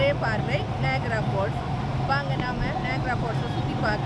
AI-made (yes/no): no